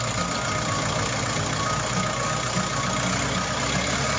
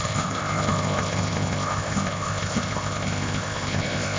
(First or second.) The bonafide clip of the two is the first